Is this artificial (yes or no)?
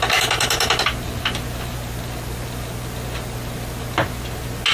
no